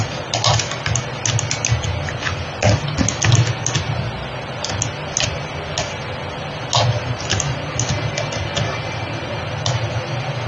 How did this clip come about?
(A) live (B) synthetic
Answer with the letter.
A